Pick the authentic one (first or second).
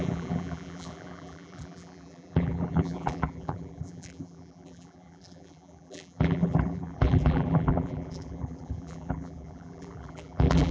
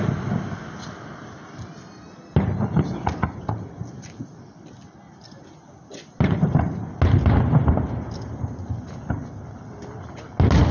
second